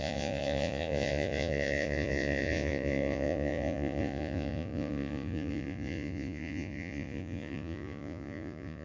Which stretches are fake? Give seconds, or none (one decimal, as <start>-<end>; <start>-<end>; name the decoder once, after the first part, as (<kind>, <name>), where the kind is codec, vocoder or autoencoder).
0.0-8.8 (vocoder, Vocos)